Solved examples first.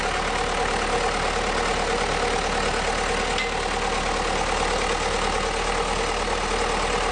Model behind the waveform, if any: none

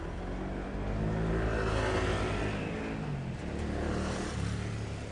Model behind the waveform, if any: none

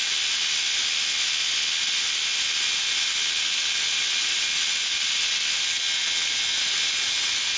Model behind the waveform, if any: none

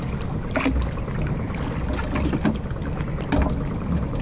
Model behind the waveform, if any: none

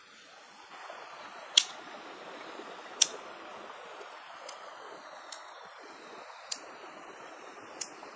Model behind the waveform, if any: none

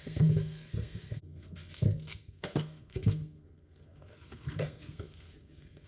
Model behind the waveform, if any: codec, SNAC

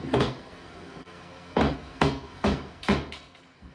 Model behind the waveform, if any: codec, SNAC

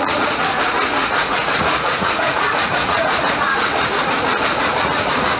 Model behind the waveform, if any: vocoder, Vocos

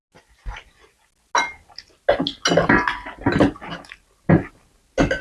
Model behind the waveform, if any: none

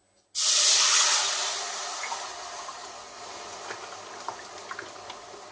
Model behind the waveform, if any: none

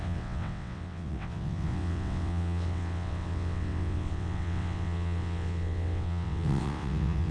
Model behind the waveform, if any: vocoder, WaveNeXt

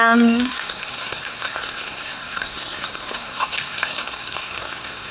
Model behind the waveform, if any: codec, SNAC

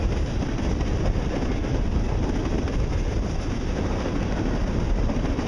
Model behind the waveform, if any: none